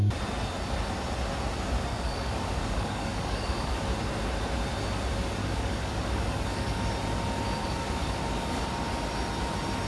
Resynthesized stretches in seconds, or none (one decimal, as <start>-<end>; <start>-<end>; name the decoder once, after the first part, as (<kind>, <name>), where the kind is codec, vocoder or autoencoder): 1.9-3.8 (codec, DAC); 5.4-6.9; 7.6-8.9